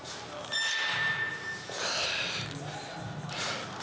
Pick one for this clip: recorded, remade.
recorded